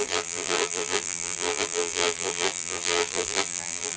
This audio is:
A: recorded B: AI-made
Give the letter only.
B